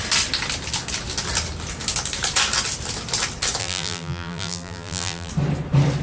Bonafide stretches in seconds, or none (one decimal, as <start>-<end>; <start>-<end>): 0.0-3.6; 5.3-6.0